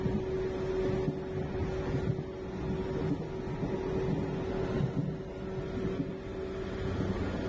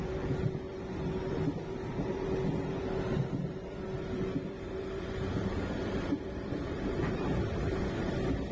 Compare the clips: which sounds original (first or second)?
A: first